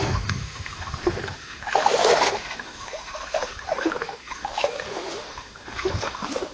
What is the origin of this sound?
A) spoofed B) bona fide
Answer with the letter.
A